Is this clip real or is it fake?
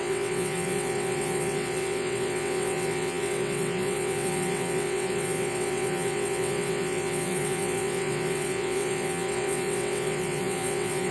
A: fake